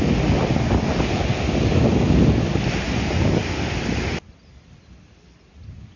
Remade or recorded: recorded